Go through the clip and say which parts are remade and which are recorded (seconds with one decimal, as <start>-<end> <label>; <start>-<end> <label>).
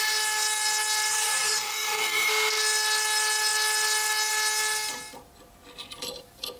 0.0-1.1 recorded; 1.1-2.3 remade; 2.3-6.6 recorded